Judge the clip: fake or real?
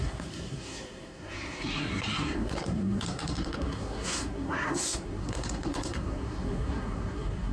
fake